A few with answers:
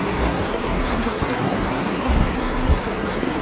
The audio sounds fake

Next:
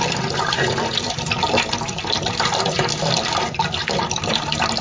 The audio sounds fake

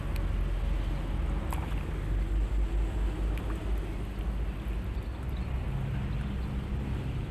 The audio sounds real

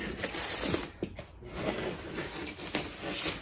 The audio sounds real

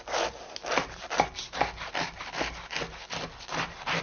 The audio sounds real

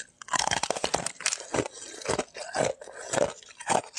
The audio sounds real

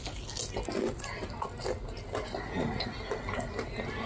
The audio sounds real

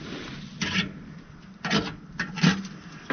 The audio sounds real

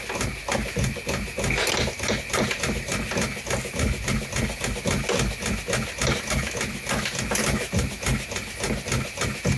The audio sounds real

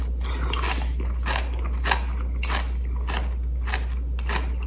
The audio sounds real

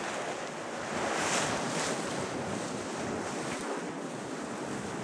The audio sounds real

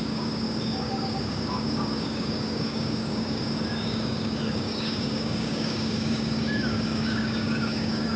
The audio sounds fake